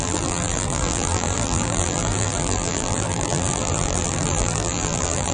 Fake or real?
fake